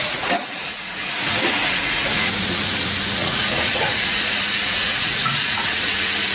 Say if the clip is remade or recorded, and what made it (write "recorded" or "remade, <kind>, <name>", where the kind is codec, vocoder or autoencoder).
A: remade, vocoder, Vocos